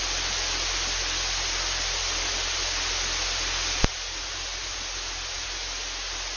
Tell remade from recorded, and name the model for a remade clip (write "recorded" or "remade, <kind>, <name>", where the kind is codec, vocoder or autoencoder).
recorded